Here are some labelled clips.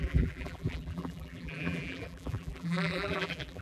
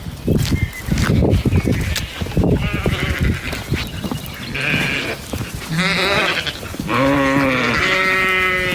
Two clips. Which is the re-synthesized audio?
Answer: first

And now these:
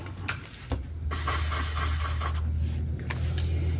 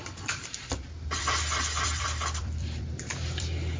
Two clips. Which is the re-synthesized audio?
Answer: second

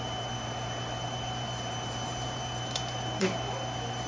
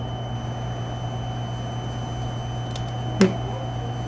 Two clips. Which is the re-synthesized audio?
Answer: first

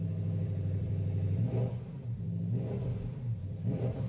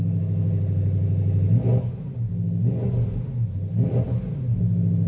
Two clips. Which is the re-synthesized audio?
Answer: first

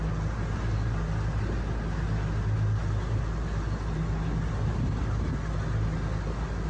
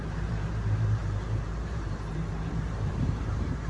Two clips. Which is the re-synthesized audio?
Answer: second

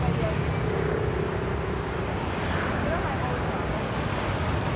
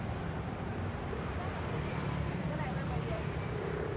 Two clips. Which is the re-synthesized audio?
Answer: second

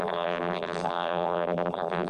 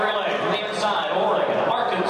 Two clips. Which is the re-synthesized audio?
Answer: first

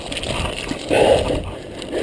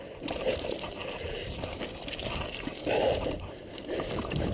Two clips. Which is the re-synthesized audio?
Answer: second